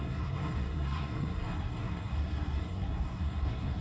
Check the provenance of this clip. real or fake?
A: fake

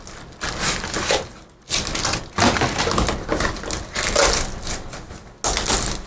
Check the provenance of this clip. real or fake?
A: real